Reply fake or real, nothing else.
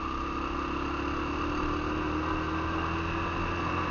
real